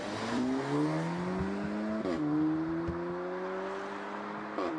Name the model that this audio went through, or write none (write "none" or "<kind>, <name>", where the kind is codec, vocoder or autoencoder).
none